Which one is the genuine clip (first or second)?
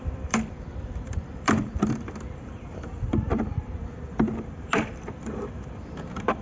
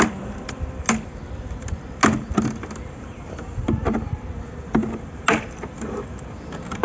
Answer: second